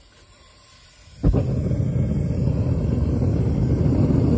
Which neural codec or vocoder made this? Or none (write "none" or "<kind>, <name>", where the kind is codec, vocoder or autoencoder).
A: none